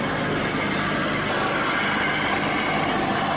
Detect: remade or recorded recorded